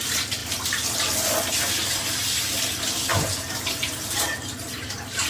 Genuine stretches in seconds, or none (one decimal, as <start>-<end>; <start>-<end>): 0.0-3.1